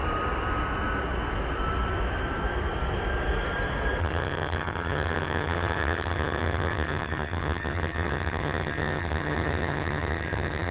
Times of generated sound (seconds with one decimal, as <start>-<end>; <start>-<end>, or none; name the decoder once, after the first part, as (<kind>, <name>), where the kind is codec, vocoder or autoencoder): 4.0-10.7 (vocoder, HiFi-GAN)